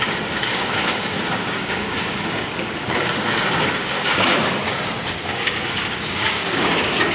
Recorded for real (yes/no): no